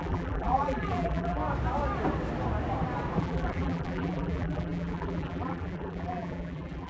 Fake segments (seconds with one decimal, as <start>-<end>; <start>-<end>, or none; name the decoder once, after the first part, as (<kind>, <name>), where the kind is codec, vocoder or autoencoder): 0.0-1.4 (vocoder, BigVGAN v2); 3.2-6.9